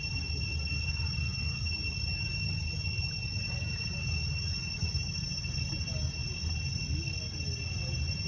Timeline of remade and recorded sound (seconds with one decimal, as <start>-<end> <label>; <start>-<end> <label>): 0.0-8.3 recorded